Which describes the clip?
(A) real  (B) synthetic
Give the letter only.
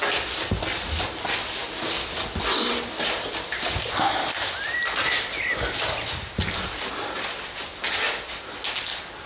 A